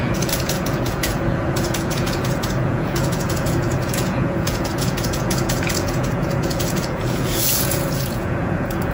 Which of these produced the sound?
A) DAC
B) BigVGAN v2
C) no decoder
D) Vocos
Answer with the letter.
D